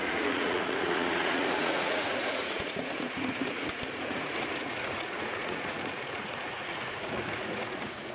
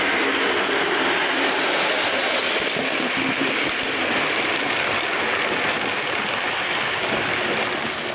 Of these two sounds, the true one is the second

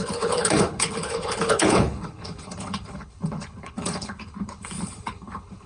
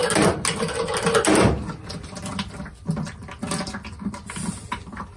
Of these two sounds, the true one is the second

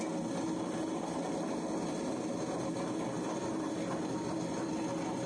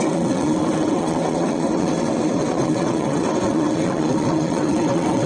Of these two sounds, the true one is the first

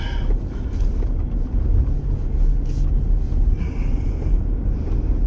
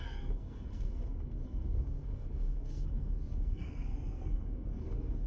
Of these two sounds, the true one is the first